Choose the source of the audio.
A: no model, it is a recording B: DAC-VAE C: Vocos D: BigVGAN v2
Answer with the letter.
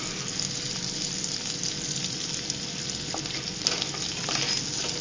A